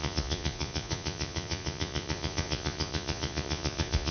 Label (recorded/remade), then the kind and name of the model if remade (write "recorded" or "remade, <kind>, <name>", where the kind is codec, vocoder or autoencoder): remade, vocoder, Vocos